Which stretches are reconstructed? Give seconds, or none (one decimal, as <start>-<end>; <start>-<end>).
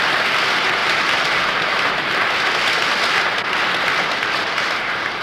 0.8-2.3; 4.4-5.2